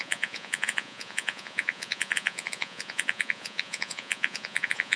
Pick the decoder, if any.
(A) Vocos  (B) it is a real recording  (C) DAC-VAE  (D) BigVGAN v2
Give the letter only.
A